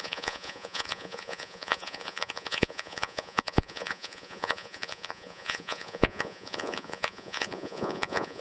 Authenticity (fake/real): fake